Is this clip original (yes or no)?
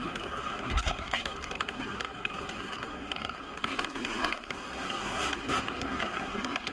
no